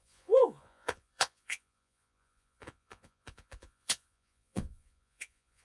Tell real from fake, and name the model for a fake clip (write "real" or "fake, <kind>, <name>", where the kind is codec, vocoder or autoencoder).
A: fake, vocoder, Vocos